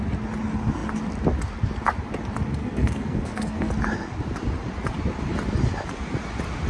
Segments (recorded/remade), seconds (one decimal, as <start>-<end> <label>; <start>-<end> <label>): 0.0-2.6 recorded; 2.6-3.7 remade; 3.7-6.7 recorded

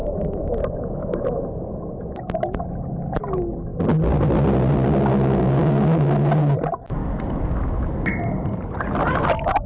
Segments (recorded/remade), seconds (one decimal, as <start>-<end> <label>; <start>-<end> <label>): 0.0-1.4 remade; 1.4-5.1 recorded; 5.1-6.3 remade; 6.3-9.7 recorded